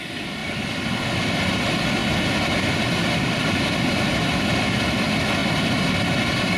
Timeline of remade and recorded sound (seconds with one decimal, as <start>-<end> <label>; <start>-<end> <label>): 0.0-6.6 recorded